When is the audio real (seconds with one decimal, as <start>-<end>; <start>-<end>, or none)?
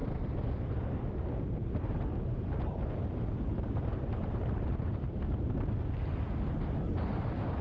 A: 0.0-7.6